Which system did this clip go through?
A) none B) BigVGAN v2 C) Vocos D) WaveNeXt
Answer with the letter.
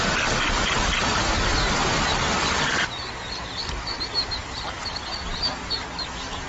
A